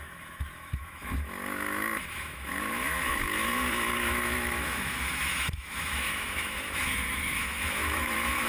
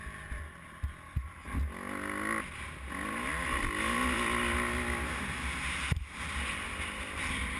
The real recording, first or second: second